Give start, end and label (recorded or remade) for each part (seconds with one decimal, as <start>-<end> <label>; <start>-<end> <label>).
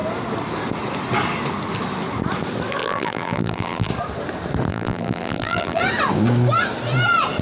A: 0.0-2.8 recorded; 2.8-3.9 remade; 3.9-4.7 recorded; 4.7-5.8 remade; 5.8-7.4 recorded